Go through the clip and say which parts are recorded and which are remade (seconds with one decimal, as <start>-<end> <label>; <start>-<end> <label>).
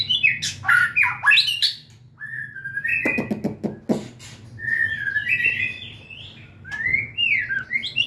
0.0-8.1 recorded